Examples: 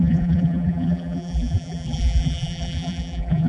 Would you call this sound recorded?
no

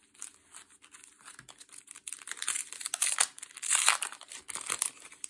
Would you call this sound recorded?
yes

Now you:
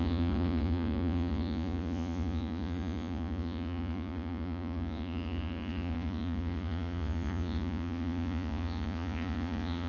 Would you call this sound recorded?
no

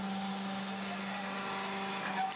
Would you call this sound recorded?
yes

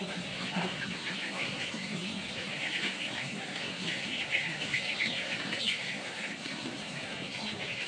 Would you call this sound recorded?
no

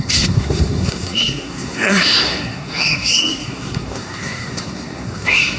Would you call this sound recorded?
no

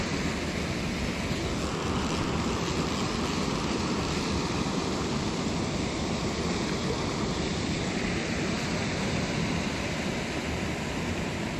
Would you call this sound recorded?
yes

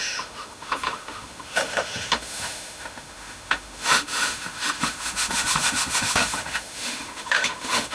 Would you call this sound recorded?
no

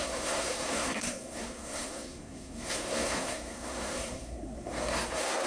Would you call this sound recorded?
no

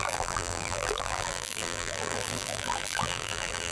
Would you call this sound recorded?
no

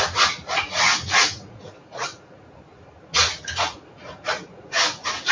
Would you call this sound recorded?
no